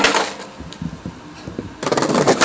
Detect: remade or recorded recorded